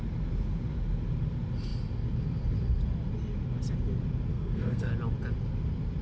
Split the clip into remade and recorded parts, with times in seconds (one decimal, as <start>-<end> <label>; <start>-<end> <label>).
0.0-4.3 recorded; 4.3-4.9 remade; 4.9-6.0 recorded